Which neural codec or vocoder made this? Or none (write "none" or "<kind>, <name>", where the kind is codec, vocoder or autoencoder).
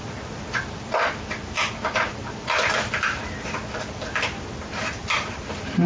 none